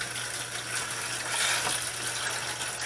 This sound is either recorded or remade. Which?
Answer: recorded